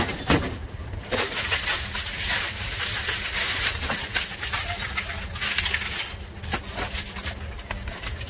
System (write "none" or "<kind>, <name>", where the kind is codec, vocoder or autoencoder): none